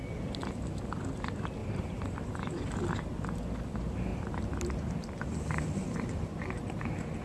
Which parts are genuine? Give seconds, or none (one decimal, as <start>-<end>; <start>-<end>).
0.0-1.6; 2.6-4.1; 6.4-7.2